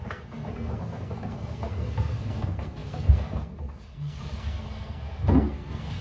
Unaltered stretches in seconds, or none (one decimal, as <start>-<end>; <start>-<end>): none